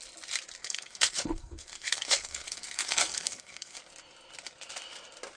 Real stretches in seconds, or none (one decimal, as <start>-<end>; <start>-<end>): 0.0-0.6; 3.8-5.4